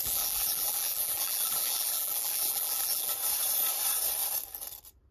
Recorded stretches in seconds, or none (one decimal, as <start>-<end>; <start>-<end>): 3.1-5.1